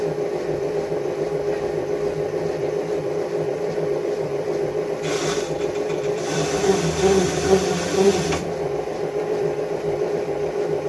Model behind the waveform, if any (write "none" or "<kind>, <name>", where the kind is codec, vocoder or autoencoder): vocoder, BigVGAN v2